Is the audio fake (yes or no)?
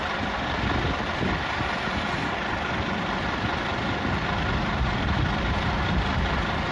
yes